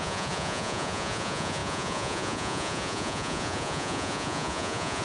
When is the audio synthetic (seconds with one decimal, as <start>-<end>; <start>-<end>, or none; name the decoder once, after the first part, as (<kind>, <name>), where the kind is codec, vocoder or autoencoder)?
0.0-5.0 (vocoder, Vocos)